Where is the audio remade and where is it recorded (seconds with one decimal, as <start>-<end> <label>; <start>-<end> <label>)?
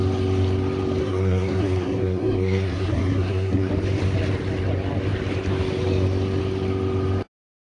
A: 0.0-1.0 recorded; 1.0-3.7 remade; 3.7-7.7 recorded